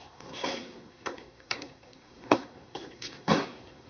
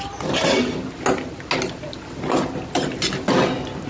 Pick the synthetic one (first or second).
first